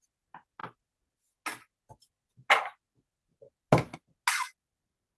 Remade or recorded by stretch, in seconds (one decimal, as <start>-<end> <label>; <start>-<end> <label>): 0.0-5.2 recorded